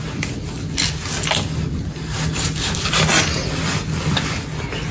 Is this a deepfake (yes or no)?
no